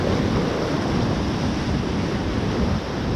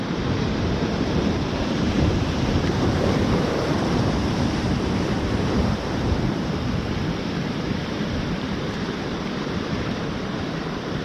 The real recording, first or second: first